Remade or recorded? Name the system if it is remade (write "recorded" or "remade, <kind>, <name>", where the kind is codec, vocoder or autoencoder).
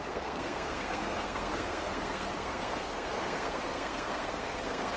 remade, codec, SNAC